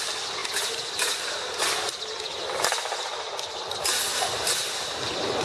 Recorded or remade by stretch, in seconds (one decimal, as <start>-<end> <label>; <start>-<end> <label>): 0.0-5.4 recorded